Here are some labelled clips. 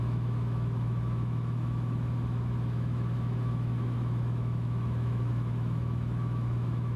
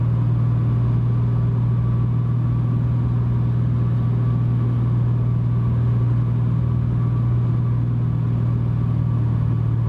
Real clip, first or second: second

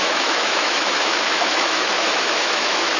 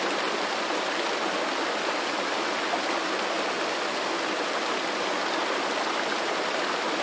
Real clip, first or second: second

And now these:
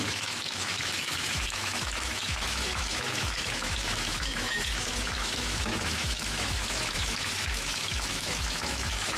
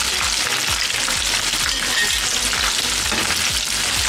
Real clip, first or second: second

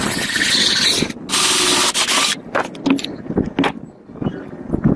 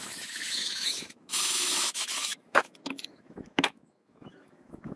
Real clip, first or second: first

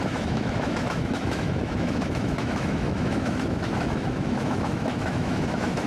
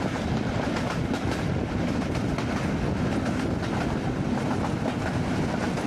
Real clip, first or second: second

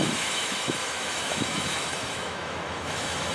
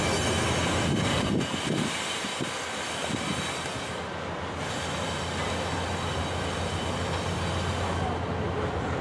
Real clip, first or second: second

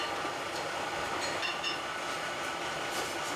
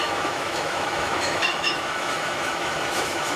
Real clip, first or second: first